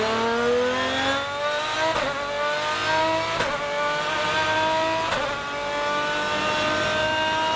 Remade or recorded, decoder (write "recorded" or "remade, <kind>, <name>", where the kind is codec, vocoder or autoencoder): recorded